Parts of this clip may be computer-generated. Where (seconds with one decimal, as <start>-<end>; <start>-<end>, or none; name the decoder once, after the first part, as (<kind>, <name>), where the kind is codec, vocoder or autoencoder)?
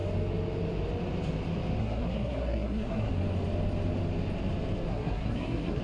1.8-3.1 (codec, SNAC); 4.9-5.8